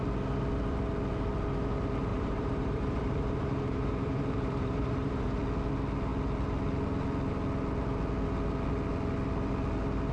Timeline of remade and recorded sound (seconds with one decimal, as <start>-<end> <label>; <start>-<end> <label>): 0.0-2.1 recorded; 2.1-5.4 remade; 5.4-10.1 recorded